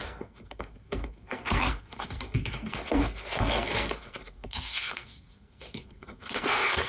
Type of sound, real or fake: fake